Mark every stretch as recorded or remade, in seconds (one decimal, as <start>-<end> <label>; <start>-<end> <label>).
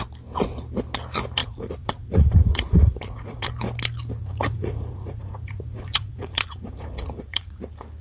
0.0-1.4 recorded; 1.4-3.5 remade; 3.5-4.2 recorded; 4.2-7.6 remade; 7.6-8.0 recorded